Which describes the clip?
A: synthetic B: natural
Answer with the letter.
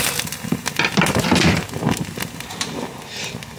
B